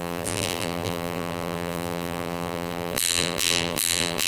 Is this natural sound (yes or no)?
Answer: no